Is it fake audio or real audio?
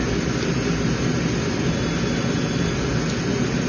real